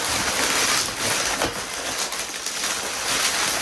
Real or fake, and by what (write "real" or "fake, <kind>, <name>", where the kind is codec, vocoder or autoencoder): real